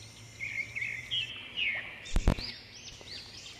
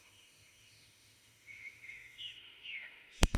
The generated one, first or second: second